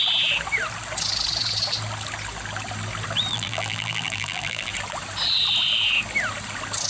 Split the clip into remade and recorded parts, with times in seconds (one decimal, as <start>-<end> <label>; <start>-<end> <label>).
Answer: 0.0-3.3 recorded; 3.3-4.7 remade; 4.7-6.9 recorded